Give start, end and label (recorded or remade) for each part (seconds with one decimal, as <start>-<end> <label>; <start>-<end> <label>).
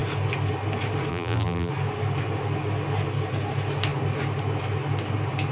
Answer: 0.0-1.1 recorded; 1.1-1.7 remade; 1.7-5.5 recorded